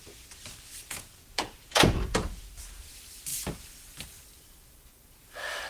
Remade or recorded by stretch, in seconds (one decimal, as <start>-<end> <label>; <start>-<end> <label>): 0.0-0.8 recorded; 0.8-2.4 remade; 2.4-5.7 recorded